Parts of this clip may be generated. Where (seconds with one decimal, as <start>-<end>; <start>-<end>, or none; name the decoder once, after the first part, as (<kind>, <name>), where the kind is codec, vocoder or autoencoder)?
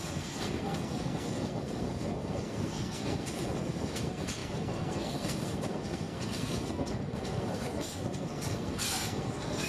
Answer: 0.0-9.7 (codec, SNAC)